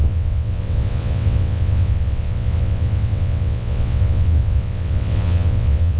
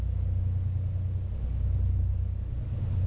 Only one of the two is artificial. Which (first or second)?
first